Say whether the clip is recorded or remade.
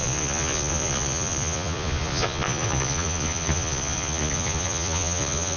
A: remade